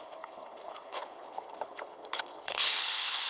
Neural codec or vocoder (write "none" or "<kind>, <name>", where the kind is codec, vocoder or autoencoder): codec, HILCodec